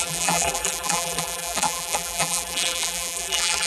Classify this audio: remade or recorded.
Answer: remade